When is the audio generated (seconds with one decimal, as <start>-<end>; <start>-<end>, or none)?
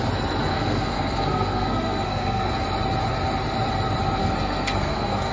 0.5-2.5; 4.2-5.3